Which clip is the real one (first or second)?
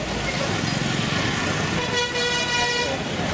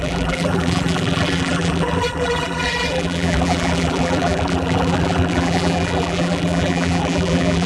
first